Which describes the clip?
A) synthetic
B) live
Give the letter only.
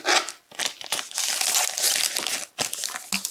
B